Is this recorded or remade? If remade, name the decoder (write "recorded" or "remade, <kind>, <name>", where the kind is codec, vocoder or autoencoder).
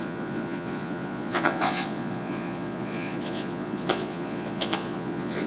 remade, vocoder, Vocos